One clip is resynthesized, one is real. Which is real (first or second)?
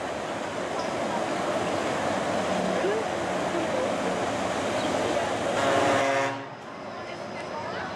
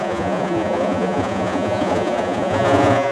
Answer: first